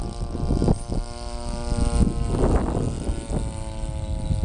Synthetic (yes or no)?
no